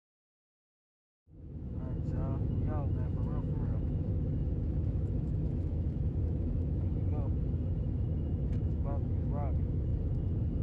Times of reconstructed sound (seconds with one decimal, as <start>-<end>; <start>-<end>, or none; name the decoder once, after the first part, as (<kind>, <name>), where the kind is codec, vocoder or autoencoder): 0.0-6.9 (autoencoder, DAC-VAE); 7.7-9.9